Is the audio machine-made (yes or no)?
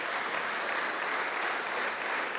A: no